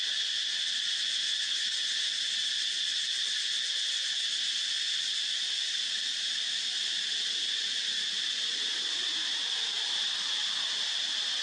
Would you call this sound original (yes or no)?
yes